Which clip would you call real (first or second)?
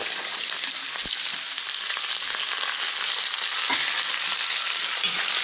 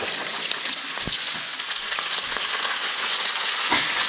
first